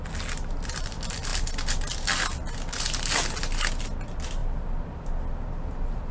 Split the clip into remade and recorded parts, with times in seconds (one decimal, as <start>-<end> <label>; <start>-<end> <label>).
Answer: 0.0-6.1 recorded